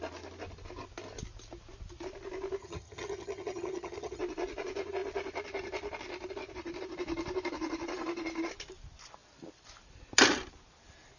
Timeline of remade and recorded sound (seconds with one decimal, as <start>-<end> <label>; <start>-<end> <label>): 0.0-2.6 recorded; 2.6-4.2 remade; 4.2-11.2 recorded